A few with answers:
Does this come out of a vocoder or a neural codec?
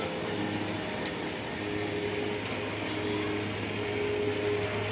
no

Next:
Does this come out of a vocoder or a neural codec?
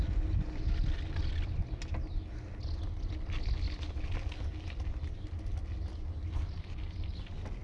no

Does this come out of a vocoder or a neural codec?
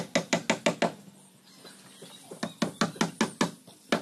no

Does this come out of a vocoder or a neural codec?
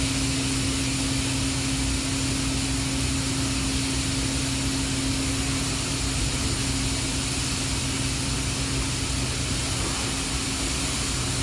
no